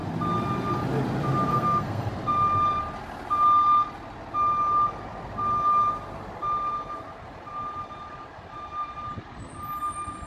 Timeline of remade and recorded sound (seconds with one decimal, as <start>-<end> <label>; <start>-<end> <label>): 0.0-1.5 recorded; 1.5-2.1 remade; 2.1-10.3 recorded